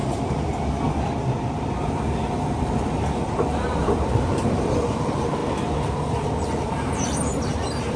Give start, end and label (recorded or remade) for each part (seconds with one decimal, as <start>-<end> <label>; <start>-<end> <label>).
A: 0.0-2.4 recorded; 2.4-8.0 remade